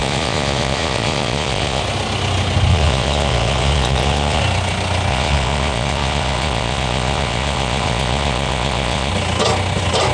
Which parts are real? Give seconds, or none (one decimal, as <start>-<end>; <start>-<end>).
1.8-2.7; 4.4-5.1; 9.1-10.1